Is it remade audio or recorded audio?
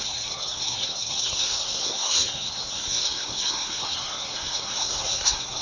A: remade